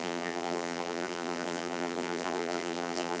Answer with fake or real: fake